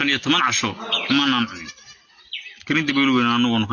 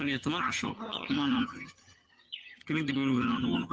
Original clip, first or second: first